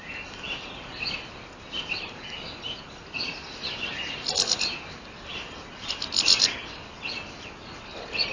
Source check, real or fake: real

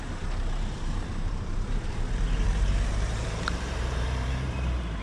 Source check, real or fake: fake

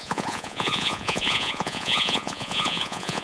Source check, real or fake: fake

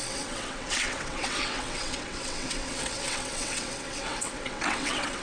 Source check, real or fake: fake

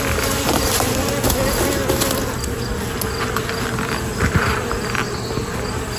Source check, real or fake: real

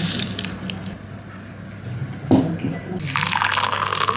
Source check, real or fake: real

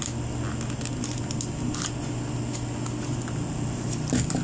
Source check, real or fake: real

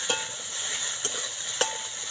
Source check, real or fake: real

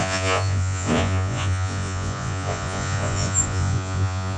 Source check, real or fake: fake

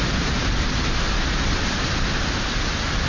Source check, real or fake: real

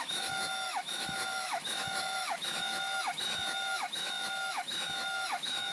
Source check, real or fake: fake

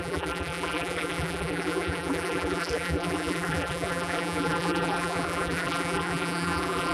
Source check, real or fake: fake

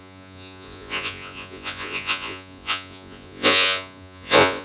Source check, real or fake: fake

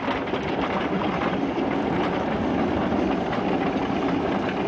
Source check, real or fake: real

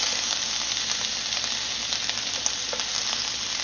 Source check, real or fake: real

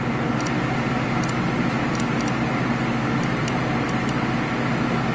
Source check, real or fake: real